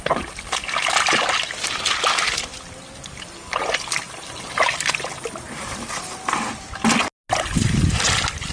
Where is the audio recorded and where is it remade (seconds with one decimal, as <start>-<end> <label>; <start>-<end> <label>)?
0.0-8.5 recorded